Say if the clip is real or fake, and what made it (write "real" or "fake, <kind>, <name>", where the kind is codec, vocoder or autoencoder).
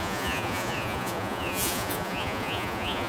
fake, vocoder, Vocos